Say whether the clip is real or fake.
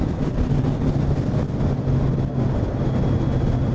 real